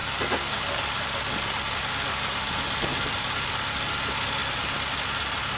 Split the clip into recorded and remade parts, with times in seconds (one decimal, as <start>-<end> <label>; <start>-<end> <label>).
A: 0.0-0.6 remade; 0.6-5.6 recorded